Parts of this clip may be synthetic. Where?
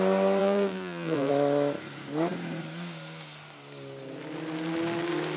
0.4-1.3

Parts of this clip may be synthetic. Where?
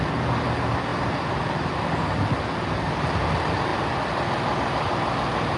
0.9-1.8; 3.7-4.9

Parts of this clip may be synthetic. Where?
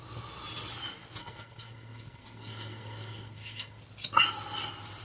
1.2-3.8